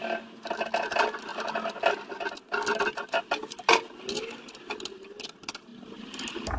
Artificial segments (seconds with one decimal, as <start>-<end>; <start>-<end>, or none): none